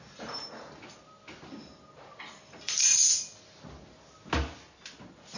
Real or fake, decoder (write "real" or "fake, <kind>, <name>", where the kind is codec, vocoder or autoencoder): real